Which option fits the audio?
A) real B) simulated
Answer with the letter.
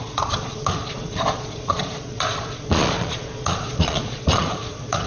B